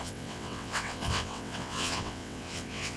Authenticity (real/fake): fake